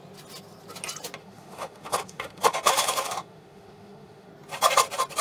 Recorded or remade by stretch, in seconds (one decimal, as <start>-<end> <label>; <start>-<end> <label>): 0.0-1.2 recorded; 1.2-4.3 remade; 4.3-5.2 recorded